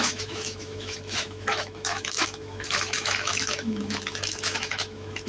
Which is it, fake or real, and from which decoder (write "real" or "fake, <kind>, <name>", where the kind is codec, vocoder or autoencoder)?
fake, autoencoder, DAC-VAE